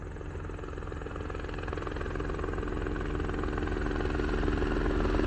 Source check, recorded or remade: recorded